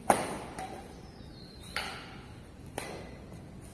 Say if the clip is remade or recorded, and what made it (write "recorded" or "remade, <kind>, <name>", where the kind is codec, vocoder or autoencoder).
recorded